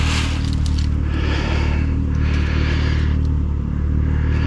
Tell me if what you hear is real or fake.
real